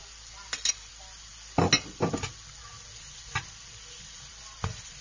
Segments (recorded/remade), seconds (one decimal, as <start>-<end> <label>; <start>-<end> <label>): 0.0-5.0 recorded